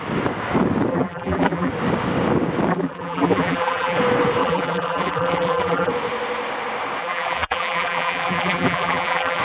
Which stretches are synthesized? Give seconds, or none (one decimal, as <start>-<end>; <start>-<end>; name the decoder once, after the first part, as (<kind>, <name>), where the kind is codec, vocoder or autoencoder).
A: 0.9-1.7 (vocoder, BigVGAN v2); 2.7-4.0; 4.4-5.9; 7.0-9.4